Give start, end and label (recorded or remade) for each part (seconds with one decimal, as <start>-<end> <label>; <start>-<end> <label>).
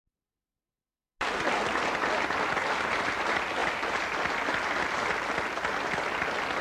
0.0-6.6 recorded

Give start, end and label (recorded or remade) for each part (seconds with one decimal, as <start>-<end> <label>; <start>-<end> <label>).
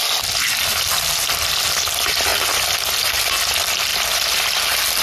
0.0-3.9 recorded; 3.9-4.6 remade; 4.6-5.0 recorded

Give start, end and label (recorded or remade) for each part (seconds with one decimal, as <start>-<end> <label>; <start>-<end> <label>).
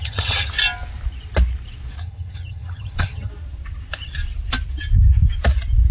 0.0-0.5 remade; 0.5-2.0 recorded; 2.0-3.3 remade; 3.3-5.9 recorded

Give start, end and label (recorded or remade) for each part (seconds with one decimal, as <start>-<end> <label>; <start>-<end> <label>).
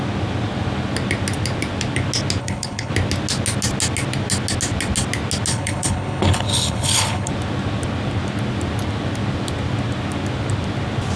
0.0-2.4 recorded; 2.4-2.9 remade; 2.9-5.5 recorded; 5.5-7.3 remade; 7.3-11.2 recorded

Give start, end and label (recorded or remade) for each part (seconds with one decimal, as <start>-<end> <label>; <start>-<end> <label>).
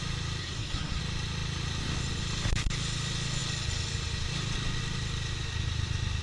0.0-0.4 recorded; 0.4-1.0 remade; 1.0-6.2 recorded